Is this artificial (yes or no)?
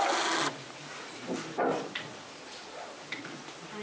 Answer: no